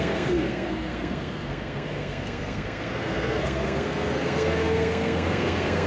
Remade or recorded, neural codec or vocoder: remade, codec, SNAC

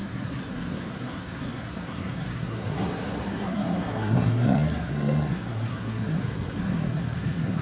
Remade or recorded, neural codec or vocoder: remade, codec, SNAC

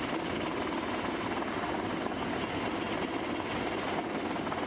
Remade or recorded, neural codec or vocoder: recorded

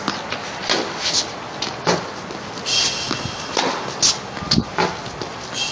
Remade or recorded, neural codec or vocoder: recorded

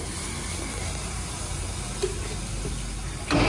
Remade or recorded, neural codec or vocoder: recorded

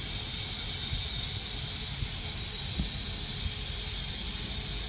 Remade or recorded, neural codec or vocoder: recorded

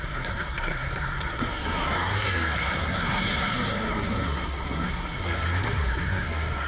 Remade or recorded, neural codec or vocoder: remade, codec, SNAC